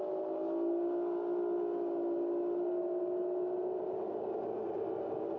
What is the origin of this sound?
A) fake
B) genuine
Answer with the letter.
B